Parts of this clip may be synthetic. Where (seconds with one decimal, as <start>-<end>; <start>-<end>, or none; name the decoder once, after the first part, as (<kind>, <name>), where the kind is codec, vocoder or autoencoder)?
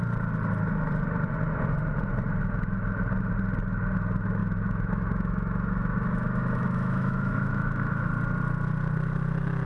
4.4-8.1 (autoencoder, DAC-VAE)